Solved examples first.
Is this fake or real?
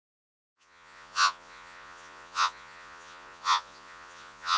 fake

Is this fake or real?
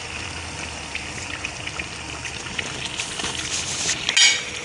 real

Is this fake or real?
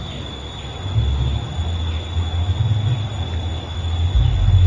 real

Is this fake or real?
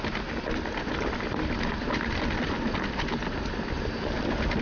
real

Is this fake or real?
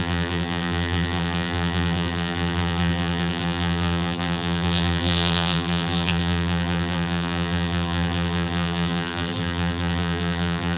fake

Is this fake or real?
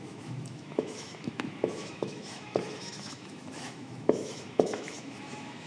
fake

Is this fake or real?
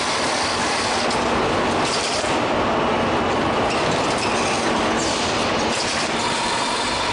fake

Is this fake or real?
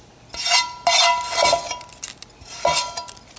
real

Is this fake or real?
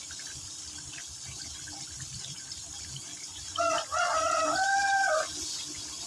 fake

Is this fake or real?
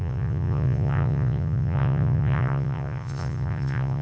fake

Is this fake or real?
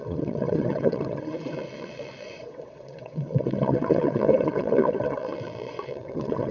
fake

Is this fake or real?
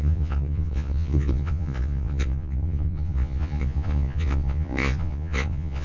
fake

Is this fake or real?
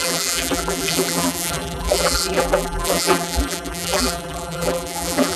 fake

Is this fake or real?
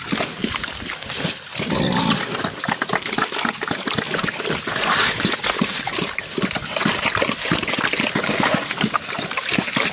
real